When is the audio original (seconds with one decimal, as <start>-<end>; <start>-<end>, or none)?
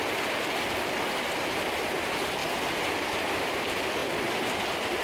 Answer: 0.0-2.4; 3.4-4.0; 4.6-5.0